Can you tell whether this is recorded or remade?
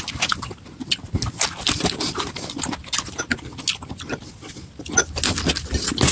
recorded